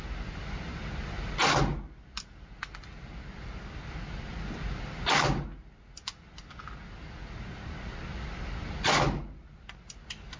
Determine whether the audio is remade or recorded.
recorded